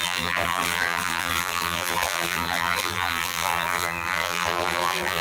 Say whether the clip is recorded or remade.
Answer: remade